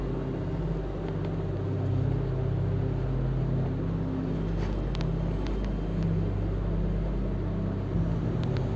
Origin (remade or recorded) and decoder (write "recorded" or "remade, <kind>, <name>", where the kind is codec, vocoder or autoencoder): recorded